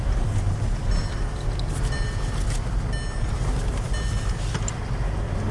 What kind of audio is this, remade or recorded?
recorded